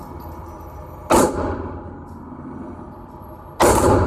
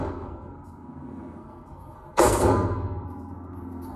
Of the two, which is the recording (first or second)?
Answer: first